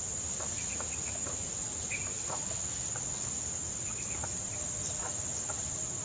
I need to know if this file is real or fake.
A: real